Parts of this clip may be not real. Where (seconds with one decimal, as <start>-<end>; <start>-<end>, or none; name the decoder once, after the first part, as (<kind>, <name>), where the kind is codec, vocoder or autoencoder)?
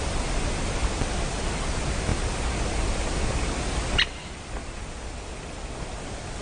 none